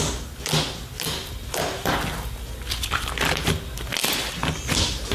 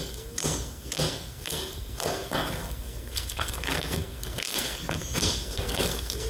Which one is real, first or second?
first